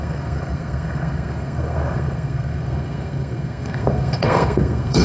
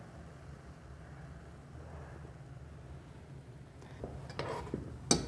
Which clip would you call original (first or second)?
second